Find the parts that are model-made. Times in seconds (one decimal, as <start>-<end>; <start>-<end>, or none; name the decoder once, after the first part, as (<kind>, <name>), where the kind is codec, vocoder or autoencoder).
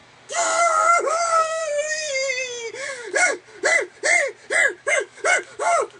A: 0.0-1.6 (codec, DAC); 2.7-3.4; 4.8-6.0